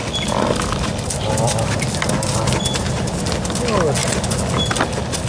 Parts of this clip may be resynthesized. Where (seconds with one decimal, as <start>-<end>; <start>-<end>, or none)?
none